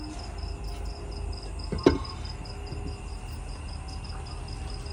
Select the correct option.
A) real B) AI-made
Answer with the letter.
A